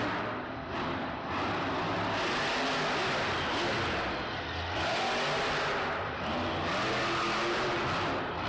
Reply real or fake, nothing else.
real